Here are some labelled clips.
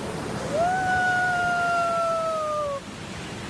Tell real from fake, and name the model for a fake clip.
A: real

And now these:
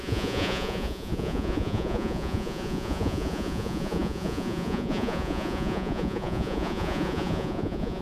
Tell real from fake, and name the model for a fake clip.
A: fake, vocoder, Vocos